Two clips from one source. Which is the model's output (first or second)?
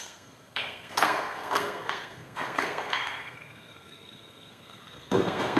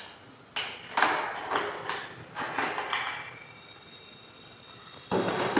first